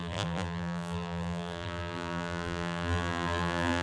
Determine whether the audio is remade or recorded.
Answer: remade